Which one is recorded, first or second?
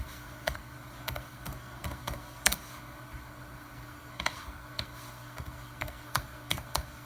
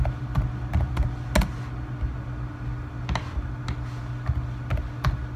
second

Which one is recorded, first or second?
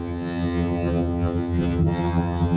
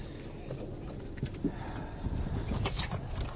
second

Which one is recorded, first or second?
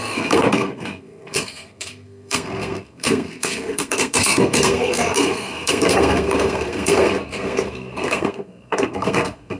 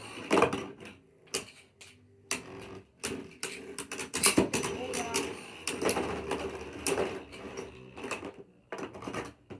second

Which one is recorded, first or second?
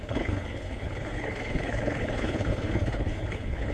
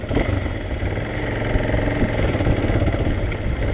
second